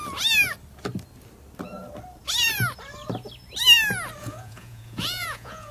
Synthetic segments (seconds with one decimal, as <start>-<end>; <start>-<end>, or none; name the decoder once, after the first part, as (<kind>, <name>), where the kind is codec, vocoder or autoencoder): 4.2-5.7 (vocoder, Vocos)